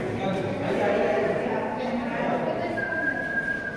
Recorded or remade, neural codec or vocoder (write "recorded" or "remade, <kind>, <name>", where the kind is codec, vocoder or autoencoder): remade, vocoder, BigVGAN v2